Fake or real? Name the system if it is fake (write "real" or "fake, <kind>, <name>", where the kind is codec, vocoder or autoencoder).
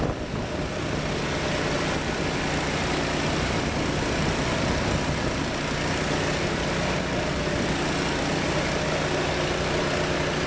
real